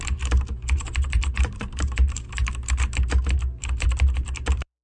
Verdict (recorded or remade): remade